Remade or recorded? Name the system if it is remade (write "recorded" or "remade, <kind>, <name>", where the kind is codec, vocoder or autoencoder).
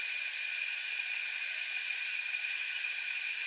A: remade, vocoder, Vocos